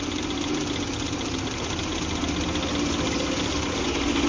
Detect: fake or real real